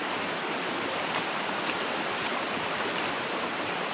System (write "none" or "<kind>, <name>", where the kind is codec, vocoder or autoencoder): none